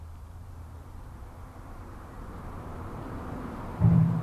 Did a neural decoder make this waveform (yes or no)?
yes